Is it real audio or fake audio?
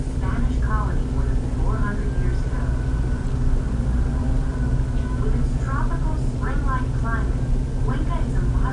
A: real